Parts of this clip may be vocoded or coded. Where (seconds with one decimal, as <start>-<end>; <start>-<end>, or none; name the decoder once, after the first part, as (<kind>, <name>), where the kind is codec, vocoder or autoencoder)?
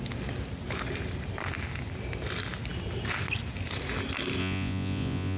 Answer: 4.4-5.4 (vocoder, Vocos)